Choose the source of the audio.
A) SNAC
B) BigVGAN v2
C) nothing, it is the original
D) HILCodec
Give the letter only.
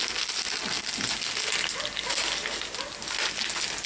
C